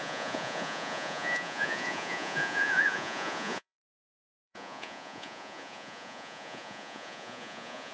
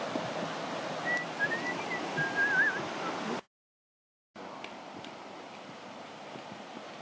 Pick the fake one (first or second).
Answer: first